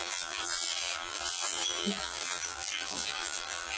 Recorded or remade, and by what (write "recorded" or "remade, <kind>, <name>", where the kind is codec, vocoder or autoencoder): remade, vocoder, BigVGAN v2